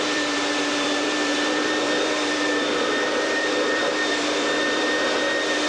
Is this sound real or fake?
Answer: fake